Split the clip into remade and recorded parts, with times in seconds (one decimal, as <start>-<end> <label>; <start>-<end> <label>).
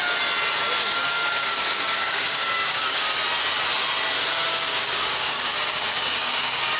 0.0-0.8 recorded; 0.8-3.1 remade; 3.1-4.5 recorded; 4.5-6.8 remade